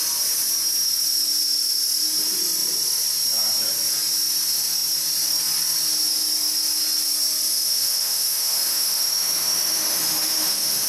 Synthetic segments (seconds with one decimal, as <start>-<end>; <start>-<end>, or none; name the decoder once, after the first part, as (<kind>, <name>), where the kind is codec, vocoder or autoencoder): 7.5-10.9 (autoencoder, DAC-VAE)